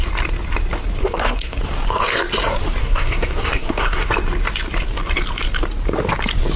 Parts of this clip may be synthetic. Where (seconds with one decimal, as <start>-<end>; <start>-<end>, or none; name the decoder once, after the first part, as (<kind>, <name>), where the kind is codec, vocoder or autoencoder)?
1.0-1.6 (codec, SNAC); 2.8-4.1